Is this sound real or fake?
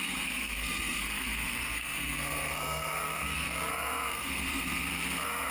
fake